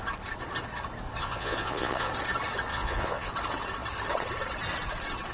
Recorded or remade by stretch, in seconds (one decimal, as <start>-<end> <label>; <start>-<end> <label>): 0.0-1.2 recorded; 1.2-2.1 remade; 2.1-2.7 recorded; 2.7-3.3 remade; 3.3-5.3 recorded